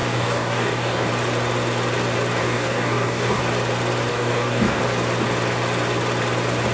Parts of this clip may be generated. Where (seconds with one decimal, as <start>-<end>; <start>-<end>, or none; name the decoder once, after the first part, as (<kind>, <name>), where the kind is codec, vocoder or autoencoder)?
0.0-1.1 (codec, DAC); 2.4-3.4; 4.1-4.8